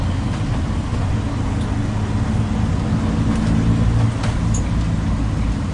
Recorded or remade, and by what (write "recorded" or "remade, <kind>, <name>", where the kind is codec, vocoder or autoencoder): recorded